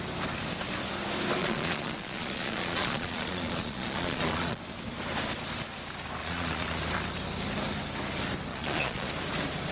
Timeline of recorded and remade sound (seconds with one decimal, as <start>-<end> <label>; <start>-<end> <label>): 0.0-1.4 recorded; 1.4-4.6 remade; 4.6-6.2 recorded; 6.2-6.8 remade; 6.8-8.5 recorded; 8.5-9.1 remade; 9.1-9.7 recorded